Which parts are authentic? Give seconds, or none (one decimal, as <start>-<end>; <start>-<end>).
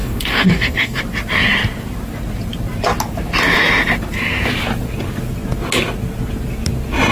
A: 1.0-7.1